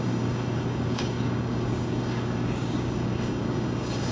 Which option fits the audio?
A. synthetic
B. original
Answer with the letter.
A